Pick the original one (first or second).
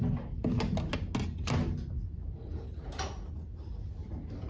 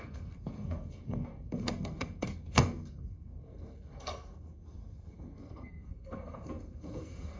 first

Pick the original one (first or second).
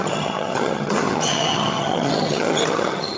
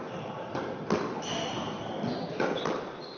second